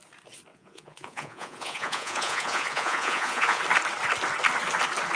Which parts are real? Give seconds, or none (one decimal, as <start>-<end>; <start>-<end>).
0.0-0.5; 3.6-5.2